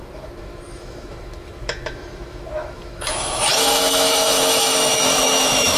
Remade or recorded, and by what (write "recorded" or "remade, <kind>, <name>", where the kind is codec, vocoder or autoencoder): remade, autoencoder, DAC-VAE